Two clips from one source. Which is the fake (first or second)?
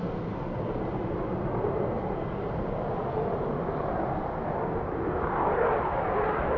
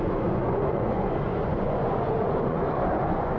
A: second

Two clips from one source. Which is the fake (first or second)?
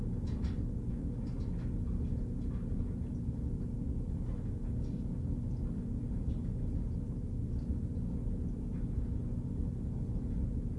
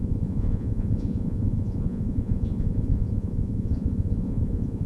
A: second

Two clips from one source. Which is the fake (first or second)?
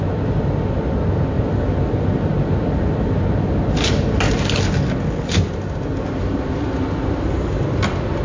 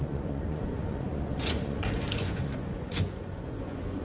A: second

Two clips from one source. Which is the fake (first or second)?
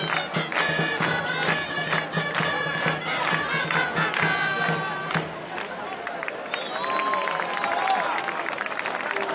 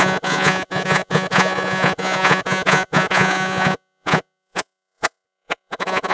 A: second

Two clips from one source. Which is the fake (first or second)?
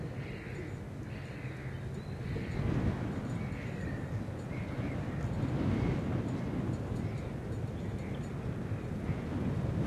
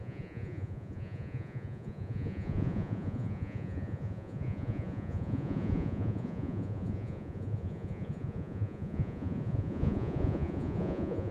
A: second